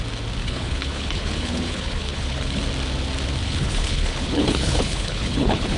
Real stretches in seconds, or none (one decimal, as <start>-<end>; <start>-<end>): 0.0-0.4; 2.6-3.4